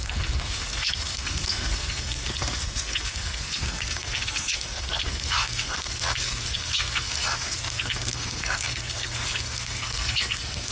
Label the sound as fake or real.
fake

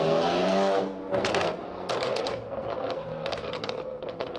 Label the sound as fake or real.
fake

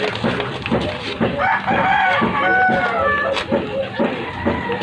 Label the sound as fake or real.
real